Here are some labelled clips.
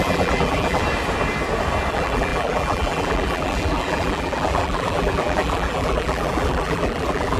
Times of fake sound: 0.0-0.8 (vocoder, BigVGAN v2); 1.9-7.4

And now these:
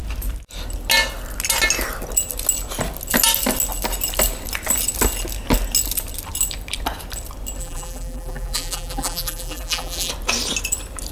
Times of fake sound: 7.6-10.1 (vocoder, BigVGAN v2)

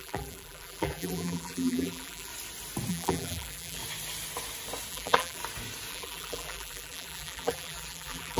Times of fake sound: 0.0-2.3 (vocoder, BigVGAN v2); 2.9-3.8; 4.9-5.4; 5.9-8.4

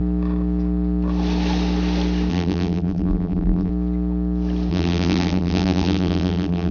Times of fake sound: 2.3-3.7 (vocoder, BigVGAN v2); 4.7-6.7

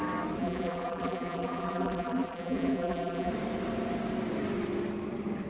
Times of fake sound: 0.4-3.3 (vocoder, BigVGAN v2)